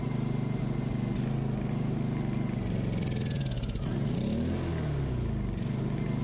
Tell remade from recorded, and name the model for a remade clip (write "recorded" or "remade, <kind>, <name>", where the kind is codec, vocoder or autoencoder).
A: recorded